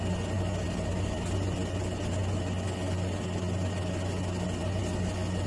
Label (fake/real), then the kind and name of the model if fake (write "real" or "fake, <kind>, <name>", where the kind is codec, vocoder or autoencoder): real